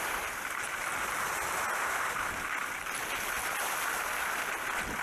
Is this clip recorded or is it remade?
recorded